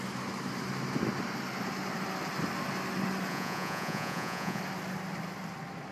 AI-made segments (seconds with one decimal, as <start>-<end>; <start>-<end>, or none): 3.3-4.6